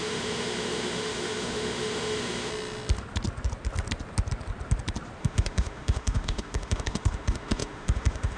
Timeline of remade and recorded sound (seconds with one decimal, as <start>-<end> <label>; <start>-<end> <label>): 0.0-2.5 remade; 2.5-5.2 recorded; 5.2-8.4 remade